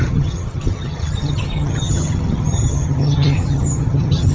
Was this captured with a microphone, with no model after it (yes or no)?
no